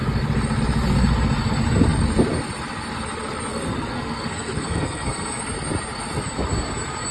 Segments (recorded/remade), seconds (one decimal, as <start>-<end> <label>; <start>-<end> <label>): 0.0-3.5 recorded; 3.5-5.4 remade; 5.4-7.1 recorded